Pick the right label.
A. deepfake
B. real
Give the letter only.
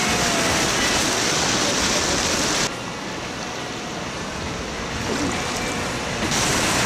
B